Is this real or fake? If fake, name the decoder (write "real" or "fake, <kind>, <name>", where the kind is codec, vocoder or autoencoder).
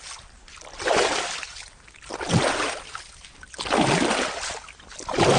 real